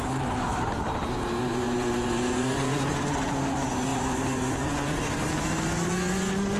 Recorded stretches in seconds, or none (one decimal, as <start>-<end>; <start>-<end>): 0.0-0.5; 3.5-3.9; 5.9-6.6